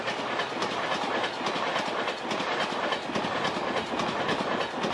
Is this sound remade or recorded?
recorded